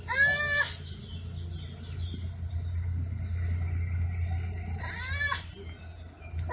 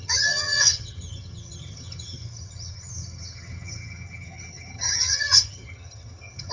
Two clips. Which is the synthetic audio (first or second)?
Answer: second